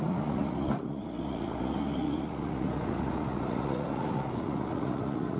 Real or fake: fake